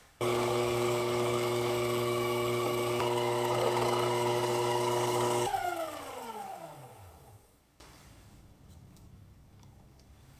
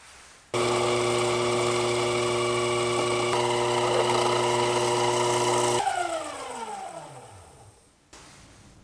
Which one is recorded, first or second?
second